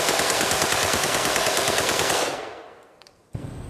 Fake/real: fake